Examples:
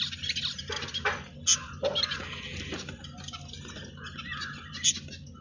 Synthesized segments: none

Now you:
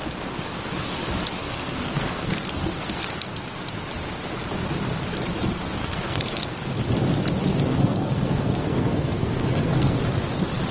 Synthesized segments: 1.4-3.3 (codec, SNAC); 5.8-6.6; 7.5-10.0